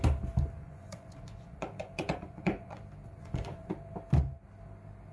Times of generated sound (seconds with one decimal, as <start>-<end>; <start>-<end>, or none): 0.6-2.8; 3.2-3.7